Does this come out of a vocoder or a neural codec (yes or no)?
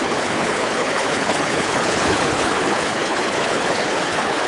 yes